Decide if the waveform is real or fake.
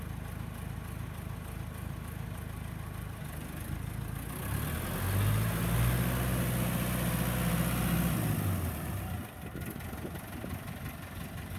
real